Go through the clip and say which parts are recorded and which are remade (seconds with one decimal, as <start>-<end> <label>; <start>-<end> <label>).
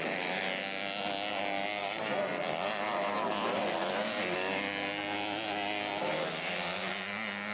0.0-1.8 recorded; 1.8-2.4 remade; 2.4-7.5 recorded